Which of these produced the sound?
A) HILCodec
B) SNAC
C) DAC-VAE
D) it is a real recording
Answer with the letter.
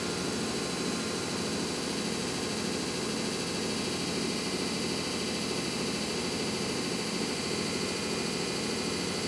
D